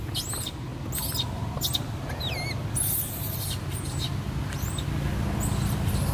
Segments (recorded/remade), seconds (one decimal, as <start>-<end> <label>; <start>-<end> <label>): 0.0-6.1 recorded